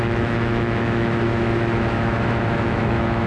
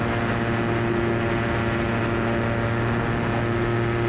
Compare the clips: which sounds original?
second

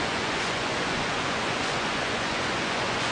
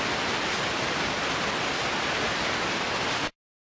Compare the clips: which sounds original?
second